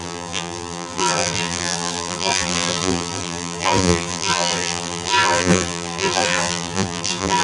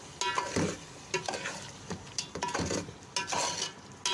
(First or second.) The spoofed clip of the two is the first